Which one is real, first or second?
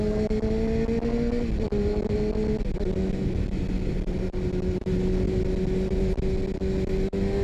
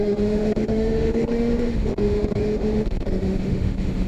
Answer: first